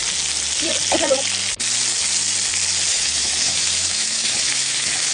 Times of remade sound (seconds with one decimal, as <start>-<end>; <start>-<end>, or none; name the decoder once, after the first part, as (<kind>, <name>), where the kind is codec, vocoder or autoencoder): 2.9-5.1 (autoencoder, DAC-VAE)